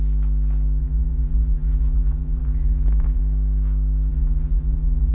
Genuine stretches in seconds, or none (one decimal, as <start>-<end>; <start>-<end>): 0.0-0.8; 3.2-4.1